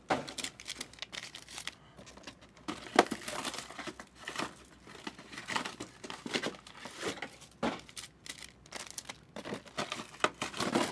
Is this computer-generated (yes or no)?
no